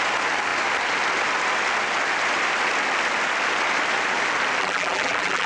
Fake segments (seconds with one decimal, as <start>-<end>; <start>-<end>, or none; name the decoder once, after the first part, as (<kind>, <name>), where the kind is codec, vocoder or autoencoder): 4.6-5.5 (vocoder, BigVGAN v2)